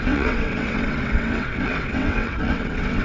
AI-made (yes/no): yes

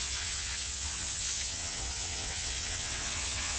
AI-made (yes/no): yes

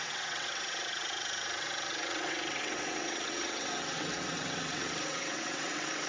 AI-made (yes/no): yes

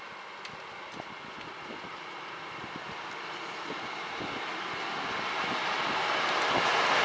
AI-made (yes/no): no